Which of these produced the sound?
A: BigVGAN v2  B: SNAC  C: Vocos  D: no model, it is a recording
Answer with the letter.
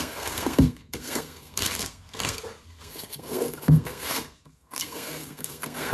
B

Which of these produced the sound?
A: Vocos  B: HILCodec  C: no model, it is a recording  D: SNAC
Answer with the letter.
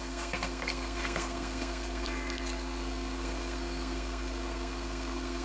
D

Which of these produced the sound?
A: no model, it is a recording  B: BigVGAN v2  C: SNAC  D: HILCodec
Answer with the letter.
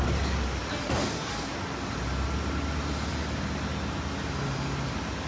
A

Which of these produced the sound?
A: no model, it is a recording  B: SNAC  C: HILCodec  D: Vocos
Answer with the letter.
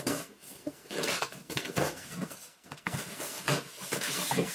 B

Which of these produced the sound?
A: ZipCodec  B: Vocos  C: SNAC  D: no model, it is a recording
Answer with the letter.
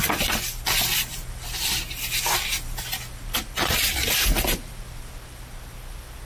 D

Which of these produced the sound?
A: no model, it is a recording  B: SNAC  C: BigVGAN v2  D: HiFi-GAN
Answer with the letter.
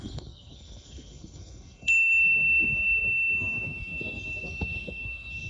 B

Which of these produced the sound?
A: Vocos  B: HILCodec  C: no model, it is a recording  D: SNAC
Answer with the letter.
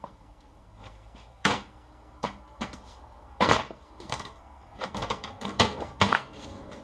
D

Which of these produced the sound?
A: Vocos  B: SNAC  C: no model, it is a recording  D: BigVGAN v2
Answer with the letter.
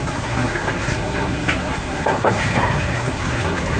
B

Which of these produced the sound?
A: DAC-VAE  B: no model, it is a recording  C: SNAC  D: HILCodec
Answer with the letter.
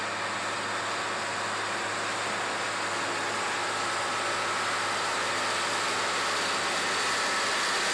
B